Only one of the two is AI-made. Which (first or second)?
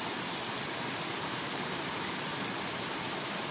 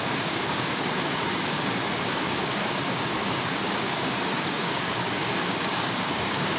second